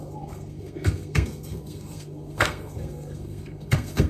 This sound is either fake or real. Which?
fake